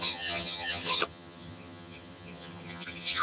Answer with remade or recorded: remade